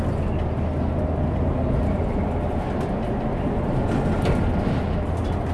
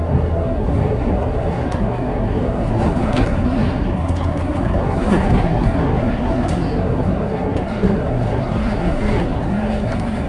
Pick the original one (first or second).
first